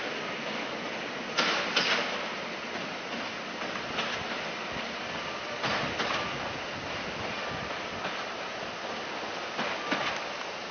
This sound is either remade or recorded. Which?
recorded